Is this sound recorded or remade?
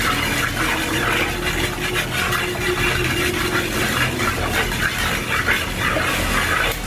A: recorded